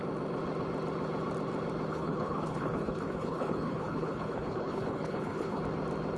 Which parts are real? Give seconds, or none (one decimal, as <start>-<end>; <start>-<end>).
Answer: 0.0-1.9; 5.6-6.2